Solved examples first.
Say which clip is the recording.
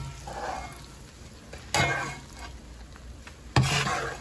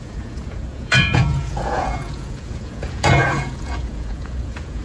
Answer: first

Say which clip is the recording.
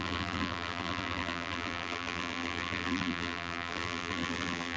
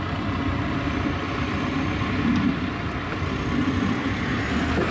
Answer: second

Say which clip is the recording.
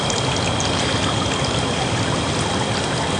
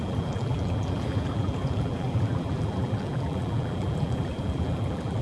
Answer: first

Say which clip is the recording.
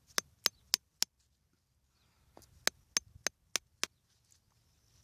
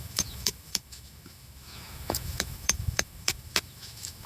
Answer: first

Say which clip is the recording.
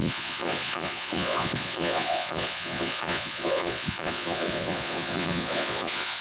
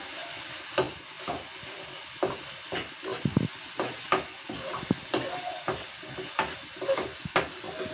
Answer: second